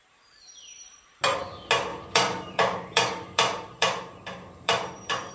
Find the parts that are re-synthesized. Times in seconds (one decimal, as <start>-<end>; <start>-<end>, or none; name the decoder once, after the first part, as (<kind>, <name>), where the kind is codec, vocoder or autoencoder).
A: 1.9-5.3 (vocoder, BigVGAN v2)